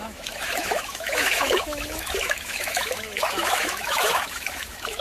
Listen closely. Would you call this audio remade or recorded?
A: remade